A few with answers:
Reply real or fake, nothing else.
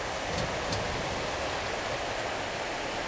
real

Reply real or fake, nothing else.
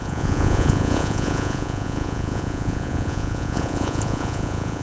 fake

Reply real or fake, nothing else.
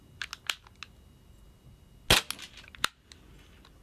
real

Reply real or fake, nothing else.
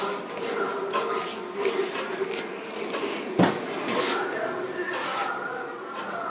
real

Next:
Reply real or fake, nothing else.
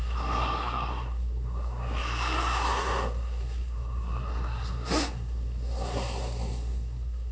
fake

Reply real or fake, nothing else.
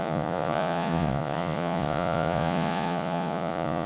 fake